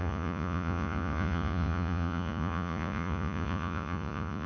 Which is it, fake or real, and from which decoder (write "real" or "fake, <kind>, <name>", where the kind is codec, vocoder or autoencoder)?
fake, vocoder, Vocos